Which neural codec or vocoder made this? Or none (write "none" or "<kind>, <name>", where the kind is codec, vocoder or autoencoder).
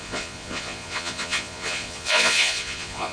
vocoder, Vocos